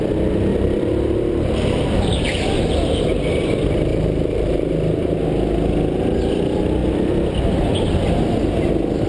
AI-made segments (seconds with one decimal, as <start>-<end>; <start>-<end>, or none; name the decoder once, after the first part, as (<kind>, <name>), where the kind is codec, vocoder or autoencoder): 0.5-3.0 (vocoder, BigVGAN v2); 3.9-4.7